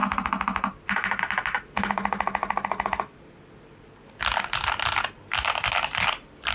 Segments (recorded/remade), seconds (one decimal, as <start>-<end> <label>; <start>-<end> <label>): 0.0-6.5 recorded